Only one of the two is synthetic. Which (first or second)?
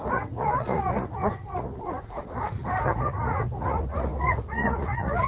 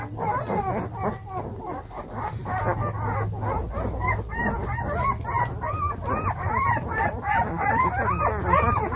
first